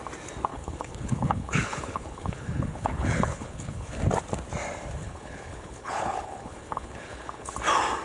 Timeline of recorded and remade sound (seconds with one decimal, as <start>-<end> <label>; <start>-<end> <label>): 0.0-0.5 recorded; 0.5-4.0 remade; 4.0-5.0 recorded; 5.0-7.5 remade; 7.5-8.0 recorded